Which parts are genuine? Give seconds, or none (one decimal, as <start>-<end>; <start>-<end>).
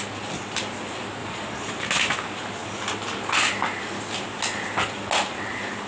0.0-1.2; 1.7-5.9